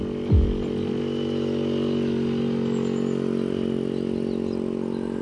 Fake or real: real